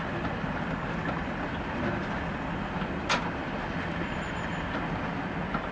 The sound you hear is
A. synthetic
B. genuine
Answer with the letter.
B